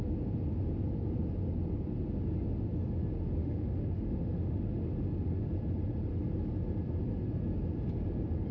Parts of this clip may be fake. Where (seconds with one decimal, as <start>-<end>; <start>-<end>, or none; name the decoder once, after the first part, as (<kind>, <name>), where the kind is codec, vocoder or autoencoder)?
3.4-4.9 (autoencoder, DAC-VAE)